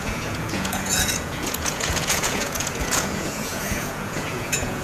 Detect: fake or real fake